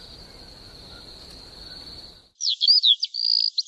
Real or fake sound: real